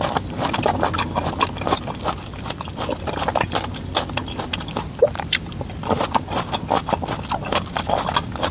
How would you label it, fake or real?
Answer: real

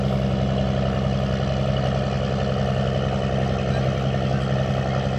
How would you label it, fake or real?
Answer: real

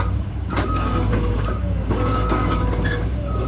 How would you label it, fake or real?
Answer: fake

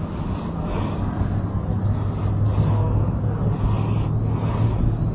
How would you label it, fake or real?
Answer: real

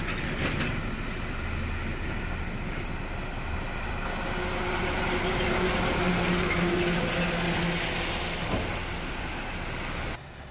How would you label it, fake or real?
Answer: real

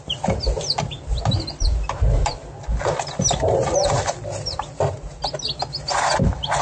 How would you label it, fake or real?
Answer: real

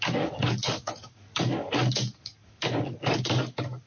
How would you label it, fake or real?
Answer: fake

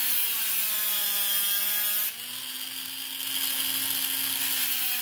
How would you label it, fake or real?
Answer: real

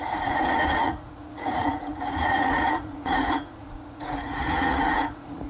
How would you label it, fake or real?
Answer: fake